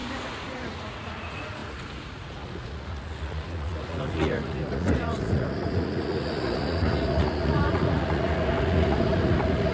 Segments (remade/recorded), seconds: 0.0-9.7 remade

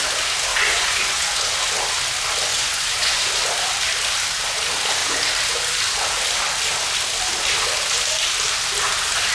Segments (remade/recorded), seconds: 0.0-0.5 recorded; 0.5-1.4 remade; 1.4-2.5 recorded; 2.5-3.3 remade; 3.3-9.3 recorded